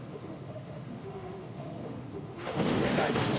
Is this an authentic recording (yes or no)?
no